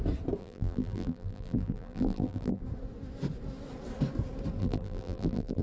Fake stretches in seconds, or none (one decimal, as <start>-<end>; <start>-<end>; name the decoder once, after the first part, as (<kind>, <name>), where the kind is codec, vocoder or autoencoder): 0.4-2.6 (vocoder, BigVGAN v2); 4.6-5.6